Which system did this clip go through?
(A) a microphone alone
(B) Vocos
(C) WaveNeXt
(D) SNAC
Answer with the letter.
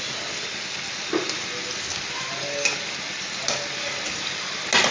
A